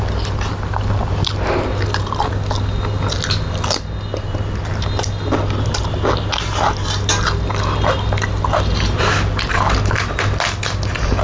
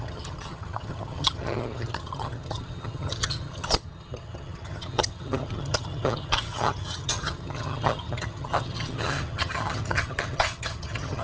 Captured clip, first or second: first